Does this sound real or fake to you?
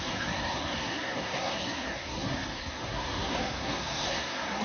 fake